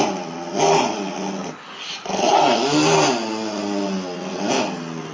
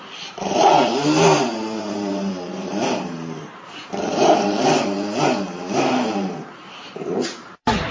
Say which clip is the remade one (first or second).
second